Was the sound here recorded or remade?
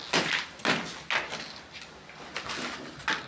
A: recorded